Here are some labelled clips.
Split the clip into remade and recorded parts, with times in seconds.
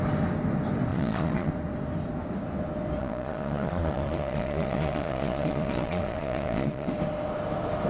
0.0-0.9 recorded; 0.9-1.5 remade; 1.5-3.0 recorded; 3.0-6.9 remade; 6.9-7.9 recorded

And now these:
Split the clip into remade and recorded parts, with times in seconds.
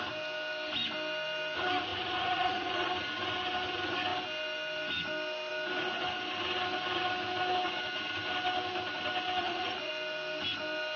0.0-1.9 recorded; 1.9-2.9 remade; 2.9-9.4 recorded; 9.4-9.9 remade; 9.9-11.0 recorded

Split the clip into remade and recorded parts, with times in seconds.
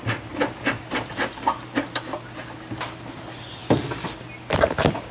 0.0-5.1 recorded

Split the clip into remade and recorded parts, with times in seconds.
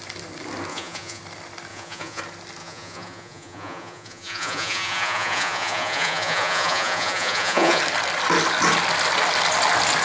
0.0-0.7 recorded; 0.7-1.2 remade; 1.2-1.7 recorded; 1.7-2.2 remade; 2.2-2.6 recorded; 2.6-7.8 remade; 7.8-10.0 recorded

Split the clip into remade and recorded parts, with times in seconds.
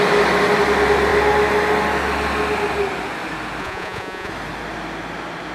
0.0-3.6 recorded; 3.6-4.3 remade; 4.3-5.5 recorded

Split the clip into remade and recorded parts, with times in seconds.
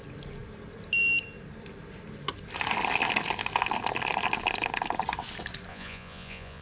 0.0-5.7 recorded; 5.7-6.6 remade